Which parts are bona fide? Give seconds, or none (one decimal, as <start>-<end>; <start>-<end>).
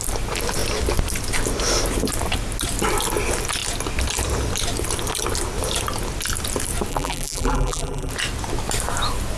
0.0-6.9; 8.1-9.4